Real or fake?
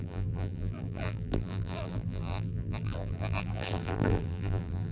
fake